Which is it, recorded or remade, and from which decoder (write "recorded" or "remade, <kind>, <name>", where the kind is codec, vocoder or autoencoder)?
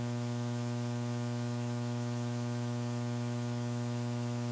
remade, autoencoder, DAC-VAE